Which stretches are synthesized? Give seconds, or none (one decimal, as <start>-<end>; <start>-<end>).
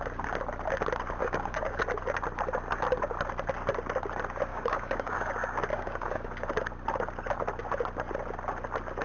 1.2-1.8; 4.5-5.3; 5.7-6.5